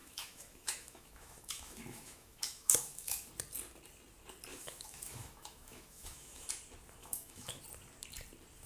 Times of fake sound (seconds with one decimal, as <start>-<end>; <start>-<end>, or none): 0.0-3.3; 4.5-6.5; 7.0-7.6